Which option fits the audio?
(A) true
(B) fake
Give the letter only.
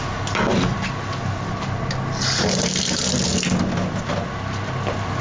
A